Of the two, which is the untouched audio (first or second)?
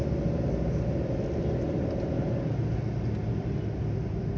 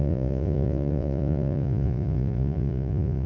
first